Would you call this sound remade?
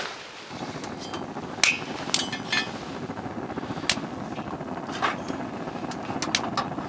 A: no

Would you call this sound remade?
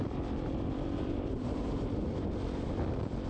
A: yes